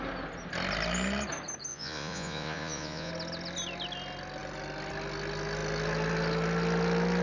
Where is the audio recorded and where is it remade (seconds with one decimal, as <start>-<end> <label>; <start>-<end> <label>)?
0.0-1.7 recorded; 1.7-3.1 remade; 3.1-7.2 recorded